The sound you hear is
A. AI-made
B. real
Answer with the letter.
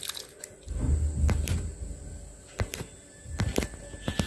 B